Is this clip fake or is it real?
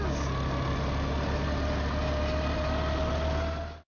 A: real